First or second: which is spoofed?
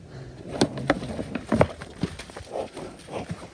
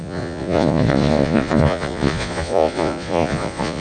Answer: second